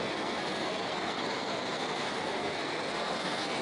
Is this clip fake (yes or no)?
yes